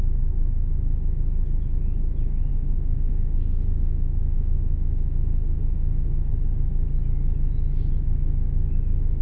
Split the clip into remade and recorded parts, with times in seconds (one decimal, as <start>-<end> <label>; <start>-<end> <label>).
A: 0.0-2.5 recorded; 2.5-6.3 remade; 6.3-9.2 recorded

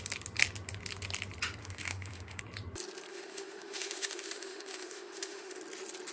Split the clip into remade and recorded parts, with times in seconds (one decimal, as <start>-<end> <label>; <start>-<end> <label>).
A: 0.0-1.6 recorded; 1.6-2.4 remade; 2.4-3.1 recorded; 3.1-5.6 remade; 5.6-6.1 recorded

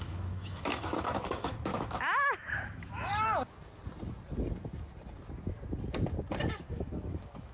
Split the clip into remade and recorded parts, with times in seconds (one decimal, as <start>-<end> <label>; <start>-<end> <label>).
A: 0.0-3.1 remade; 3.1-6.7 recorded; 6.7-7.5 remade

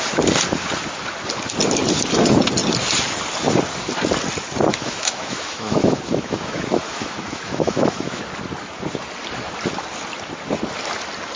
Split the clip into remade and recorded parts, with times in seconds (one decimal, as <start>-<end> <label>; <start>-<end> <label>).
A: 0.0-4.7 recorded; 4.7-8.2 remade; 8.2-11.4 recorded

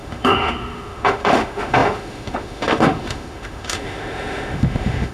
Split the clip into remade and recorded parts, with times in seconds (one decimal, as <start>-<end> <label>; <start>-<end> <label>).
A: 0.0-5.1 remade

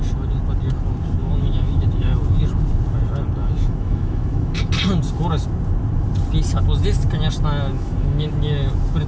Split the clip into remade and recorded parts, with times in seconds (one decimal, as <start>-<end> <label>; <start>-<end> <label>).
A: 0.0-1.2 recorded; 1.2-2.2 remade; 2.2-3.4 recorded; 3.4-4.7 remade; 4.7-7.7 recorded; 7.7-8.3 remade; 8.3-9.1 recorded

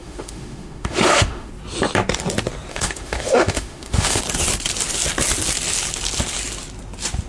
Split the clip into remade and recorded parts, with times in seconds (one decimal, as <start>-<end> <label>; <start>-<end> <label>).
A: 0.0-1.5 remade; 1.5-2.7 recorded; 2.7-4.2 remade; 4.2-7.3 recorded

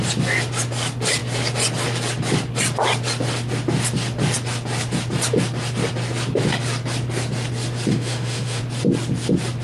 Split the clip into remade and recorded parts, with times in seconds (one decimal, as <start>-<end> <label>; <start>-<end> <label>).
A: 0.0-7.9 recorded; 7.9-8.6 remade; 8.6-9.6 recorded